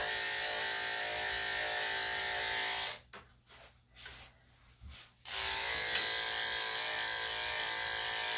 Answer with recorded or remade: recorded